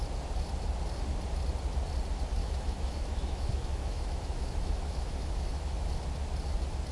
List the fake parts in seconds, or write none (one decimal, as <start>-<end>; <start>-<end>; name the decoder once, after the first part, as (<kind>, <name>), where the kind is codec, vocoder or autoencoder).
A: 2.4-5.9 (autoencoder, DAC-VAE)

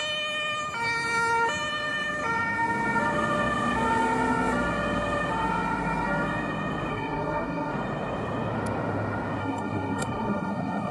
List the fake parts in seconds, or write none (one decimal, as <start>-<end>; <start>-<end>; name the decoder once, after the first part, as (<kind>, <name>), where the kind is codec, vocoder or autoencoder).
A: 6.9-7.7 (codec, SNAC); 9.4-10.9

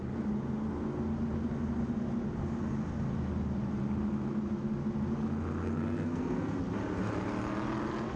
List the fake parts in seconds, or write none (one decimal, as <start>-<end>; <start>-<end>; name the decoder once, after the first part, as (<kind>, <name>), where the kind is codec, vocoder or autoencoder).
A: 5.6-6.6 (codec, SNAC)

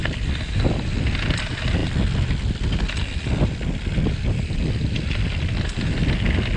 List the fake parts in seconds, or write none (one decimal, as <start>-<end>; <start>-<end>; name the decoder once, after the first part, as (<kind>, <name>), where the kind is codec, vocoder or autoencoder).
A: none

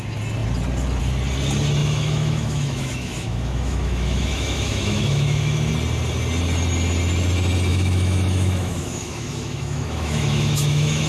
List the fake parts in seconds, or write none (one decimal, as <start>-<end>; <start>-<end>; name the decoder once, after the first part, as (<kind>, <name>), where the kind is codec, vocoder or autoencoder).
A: 1.8-5.7 (autoencoder, DAC-VAE); 7.7-11.1

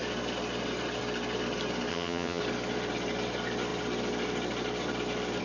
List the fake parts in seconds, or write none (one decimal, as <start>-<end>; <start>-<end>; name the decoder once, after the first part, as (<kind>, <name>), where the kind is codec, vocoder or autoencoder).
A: 1.9-2.4 (vocoder, HiFi-GAN)

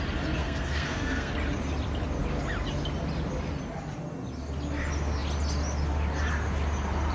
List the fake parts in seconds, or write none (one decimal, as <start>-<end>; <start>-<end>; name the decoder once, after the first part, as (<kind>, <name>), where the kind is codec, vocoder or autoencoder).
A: 0.4-1.3 (codec, SNAC)